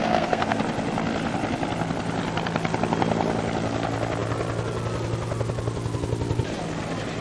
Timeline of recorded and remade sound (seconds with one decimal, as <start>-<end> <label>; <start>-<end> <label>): 0.0-0.6 remade; 0.6-7.2 recorded